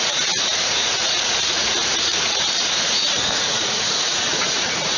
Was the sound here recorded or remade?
remade